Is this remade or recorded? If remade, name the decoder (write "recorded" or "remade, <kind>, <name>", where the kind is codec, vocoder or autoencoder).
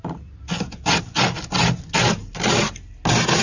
recorded